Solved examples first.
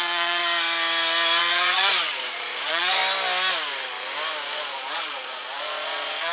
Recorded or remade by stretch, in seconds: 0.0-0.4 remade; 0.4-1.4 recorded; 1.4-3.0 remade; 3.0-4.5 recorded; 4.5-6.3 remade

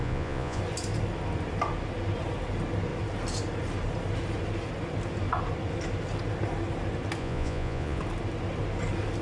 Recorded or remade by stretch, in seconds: 0.0-0.6 remade; 0.6-7.2 recorded; 7.2-8.0 remade; 8.0-9.2 recorded

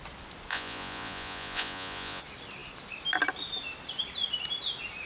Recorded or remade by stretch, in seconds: 0.0-0.5 recorded; 0.5-2.2 remade; 2.2-5.1 recorded